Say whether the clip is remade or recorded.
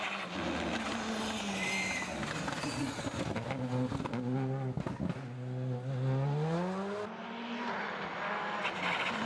recorded